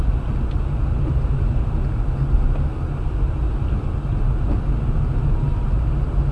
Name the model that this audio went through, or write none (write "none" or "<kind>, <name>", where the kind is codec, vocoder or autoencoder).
none